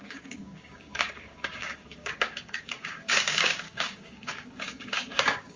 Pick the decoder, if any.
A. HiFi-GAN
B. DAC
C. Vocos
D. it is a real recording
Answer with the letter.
B